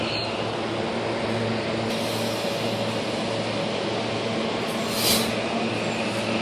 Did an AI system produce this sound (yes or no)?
no